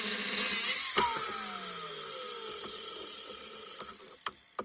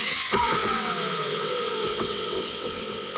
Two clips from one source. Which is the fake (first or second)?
second